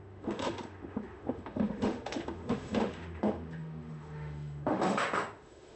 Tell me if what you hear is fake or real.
fake